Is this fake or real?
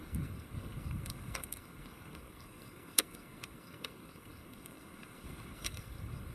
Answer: fake